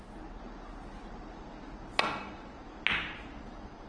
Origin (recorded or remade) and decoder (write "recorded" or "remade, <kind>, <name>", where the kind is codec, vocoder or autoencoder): recorded